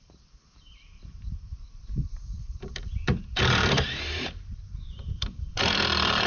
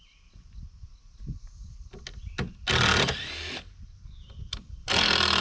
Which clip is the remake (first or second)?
first